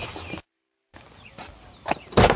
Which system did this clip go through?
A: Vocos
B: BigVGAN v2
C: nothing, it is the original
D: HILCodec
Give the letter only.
C